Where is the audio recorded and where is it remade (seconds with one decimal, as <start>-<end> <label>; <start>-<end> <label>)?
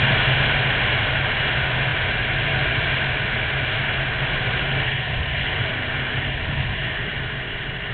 0.0-7.9 recorded